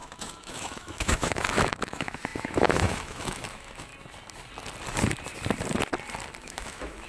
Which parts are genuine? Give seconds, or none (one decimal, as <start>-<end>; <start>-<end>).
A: 3.9-6.4